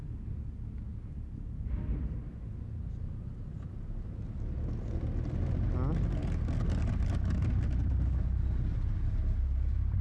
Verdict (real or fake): real